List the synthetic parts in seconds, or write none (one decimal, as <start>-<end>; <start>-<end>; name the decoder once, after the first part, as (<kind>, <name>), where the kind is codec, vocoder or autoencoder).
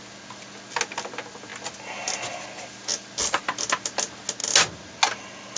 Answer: none